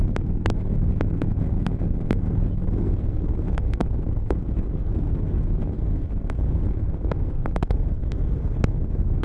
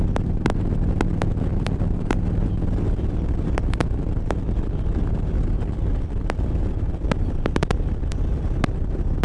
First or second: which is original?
second